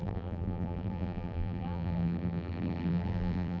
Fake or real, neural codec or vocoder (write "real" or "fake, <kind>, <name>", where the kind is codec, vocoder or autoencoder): fake, vocoder, BigVGAN v2